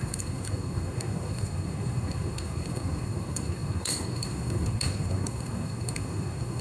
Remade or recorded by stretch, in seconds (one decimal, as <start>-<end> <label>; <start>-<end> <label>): 0.0-6.6 remade